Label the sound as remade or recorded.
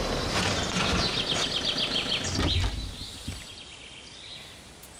recorded